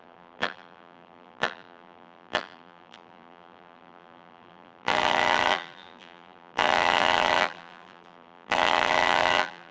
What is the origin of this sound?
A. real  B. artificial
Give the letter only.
B